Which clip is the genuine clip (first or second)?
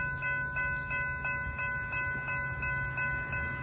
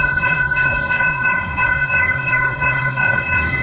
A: first